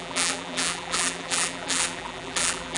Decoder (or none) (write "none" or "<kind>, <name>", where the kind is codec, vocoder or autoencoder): vocoder, BigVGAN v2